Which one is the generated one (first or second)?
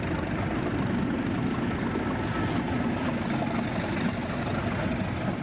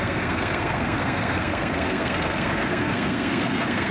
second